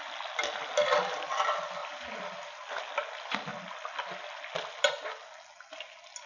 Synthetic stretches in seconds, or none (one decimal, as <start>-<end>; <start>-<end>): none